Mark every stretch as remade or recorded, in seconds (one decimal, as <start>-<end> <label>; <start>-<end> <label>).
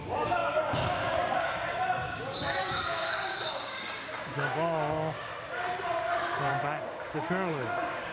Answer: 0.0-5.3 remade; 5.3-6.5 recorded; 6.5-8.1 remade